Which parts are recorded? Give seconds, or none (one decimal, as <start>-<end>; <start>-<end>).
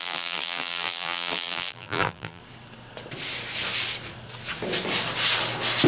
2.4-5.9